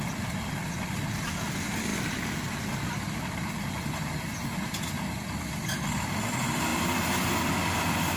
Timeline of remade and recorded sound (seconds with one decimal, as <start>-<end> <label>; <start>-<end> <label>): 0.0-8.2 recorded